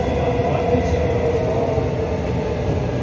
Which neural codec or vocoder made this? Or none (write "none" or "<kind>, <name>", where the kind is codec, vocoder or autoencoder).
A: none